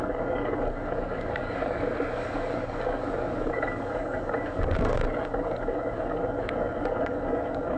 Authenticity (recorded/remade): remade